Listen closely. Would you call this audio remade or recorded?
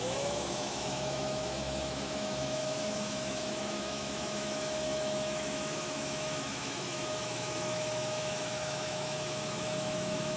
remade